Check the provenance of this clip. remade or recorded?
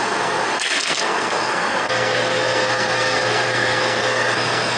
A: remade